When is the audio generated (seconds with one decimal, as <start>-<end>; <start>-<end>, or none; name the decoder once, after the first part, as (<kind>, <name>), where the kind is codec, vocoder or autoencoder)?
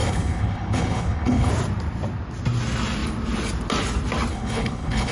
0.0-1.5 (codec, HILCodec); 4.3-5.1